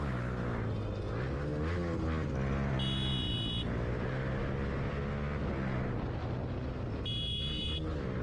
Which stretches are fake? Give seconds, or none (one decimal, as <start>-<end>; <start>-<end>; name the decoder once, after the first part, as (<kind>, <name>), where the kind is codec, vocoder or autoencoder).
none